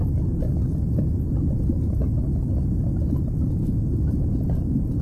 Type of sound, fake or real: fake